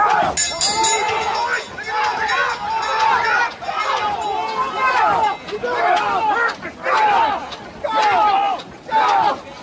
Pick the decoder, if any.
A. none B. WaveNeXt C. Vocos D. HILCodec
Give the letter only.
A